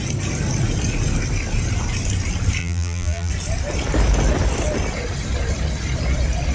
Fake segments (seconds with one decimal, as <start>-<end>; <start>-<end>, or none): 2.6-3.3